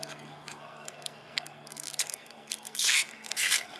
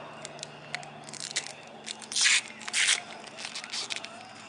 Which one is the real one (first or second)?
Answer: second